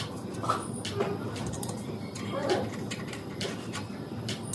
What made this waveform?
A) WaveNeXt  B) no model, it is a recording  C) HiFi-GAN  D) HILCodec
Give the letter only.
B